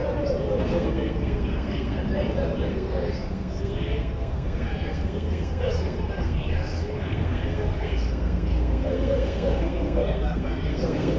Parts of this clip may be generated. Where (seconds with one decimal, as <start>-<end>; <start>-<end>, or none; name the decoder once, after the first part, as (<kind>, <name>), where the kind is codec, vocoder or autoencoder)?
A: 0.6-2.0 (codec, SNAC); 2.7-11.2